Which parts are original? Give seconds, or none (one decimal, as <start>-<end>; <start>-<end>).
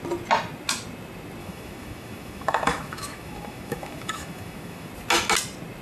0.0-1.4; 4.9-5.8